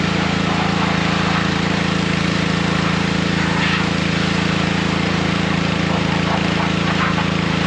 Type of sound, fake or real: fake